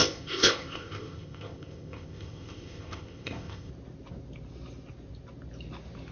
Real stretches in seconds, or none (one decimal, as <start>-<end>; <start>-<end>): 3.7-6.1